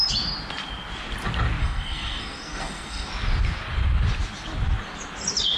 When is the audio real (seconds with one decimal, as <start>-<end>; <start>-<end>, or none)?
0.0-1.6; 3.1-5.6